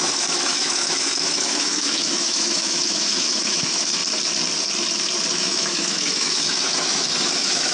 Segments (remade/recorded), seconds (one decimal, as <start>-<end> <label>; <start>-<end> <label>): 0.0-4.0 remade; 4.0-5.3 recorded; 5.3-7.7 remade